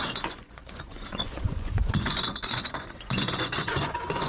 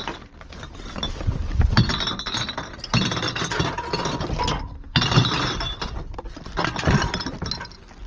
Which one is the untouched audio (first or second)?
second